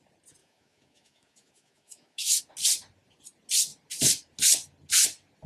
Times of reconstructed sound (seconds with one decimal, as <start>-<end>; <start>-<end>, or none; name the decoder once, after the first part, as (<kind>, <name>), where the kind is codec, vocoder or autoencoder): 0.4-2.4 (autoencoder, DAC-VAE)